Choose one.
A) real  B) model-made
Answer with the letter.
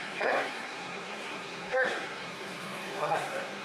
B